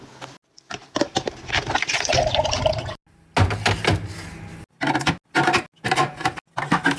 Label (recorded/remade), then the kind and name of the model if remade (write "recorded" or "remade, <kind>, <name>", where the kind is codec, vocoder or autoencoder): recorded